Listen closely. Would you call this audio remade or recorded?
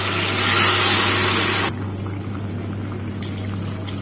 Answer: recorded